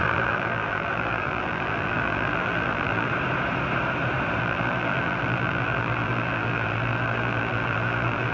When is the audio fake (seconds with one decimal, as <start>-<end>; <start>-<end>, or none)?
0.0-3.1; 4.4-8.3

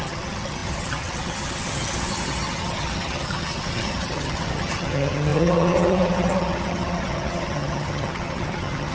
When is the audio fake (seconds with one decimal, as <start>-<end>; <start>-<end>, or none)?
0.0-8.9